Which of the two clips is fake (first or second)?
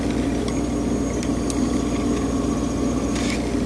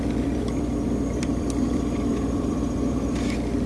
second